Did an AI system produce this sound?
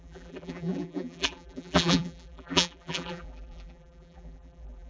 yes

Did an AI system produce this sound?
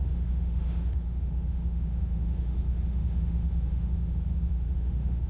yes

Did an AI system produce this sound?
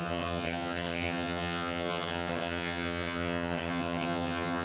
yes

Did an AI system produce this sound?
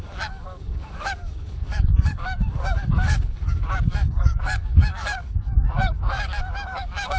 yes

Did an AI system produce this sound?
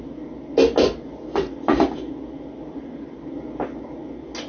no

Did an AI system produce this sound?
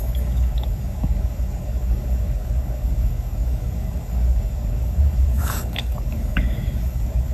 yes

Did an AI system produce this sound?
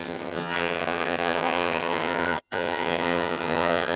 yes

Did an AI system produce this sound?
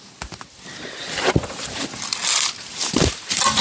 no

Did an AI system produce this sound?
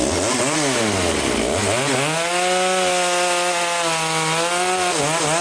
no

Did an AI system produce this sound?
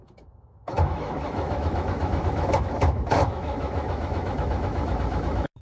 yes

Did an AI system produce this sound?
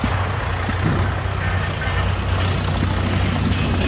no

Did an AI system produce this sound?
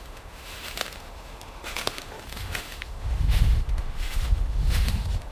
yes